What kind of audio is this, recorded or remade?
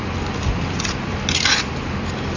recorded